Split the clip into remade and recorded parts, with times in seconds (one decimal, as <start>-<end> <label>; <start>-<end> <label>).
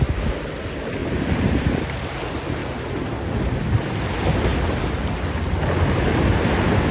0.0-1.0 recorded; 1.0-1.8 remade; 1.8-6.9 recorded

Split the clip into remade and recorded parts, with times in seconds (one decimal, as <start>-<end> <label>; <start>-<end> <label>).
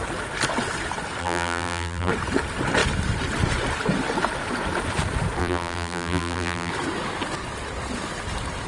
0.0-1.2 recorded; 1.2-2.1 remade; 2.1-5.4 recorded; 5.4-6.7 remade; 6.7-8.7 recorded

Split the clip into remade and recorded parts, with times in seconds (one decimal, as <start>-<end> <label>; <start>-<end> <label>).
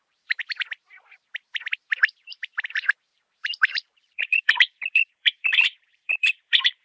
0.0-0.4 remade; 0.4-2.1 recorded; 2.1-6.8 remade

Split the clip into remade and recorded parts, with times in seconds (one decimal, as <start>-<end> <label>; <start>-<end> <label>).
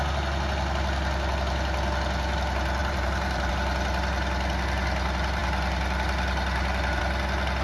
0.0-2.8 recorded; 2.8-3.5 remade; 3.5-7.6 recorded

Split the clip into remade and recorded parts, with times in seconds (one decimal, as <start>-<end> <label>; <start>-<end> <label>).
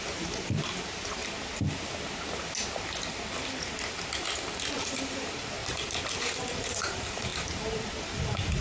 0.0-1.2 remade; 1.2-4.8 recorded; 4.8-5.6 remade; 5.6-6.2 recorded; 6.2-8.6 remade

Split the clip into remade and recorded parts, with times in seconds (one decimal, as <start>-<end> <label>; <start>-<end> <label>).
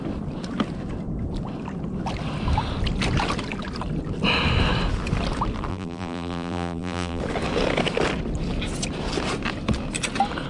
0.0-5.7 recorded; 5.7-7.2 remade; 7.2-10.5 recorded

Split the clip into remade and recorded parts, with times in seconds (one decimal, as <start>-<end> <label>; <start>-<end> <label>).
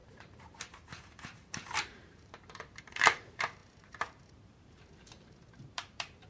0.0-6.3 remade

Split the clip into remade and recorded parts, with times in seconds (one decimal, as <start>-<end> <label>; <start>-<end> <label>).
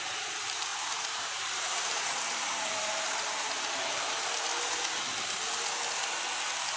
0.0-4.5 remade; 4.5-6.8 recorded